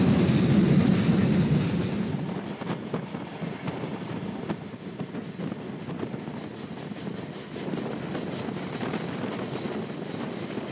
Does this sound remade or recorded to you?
recorded